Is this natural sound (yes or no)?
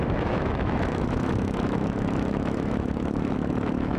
no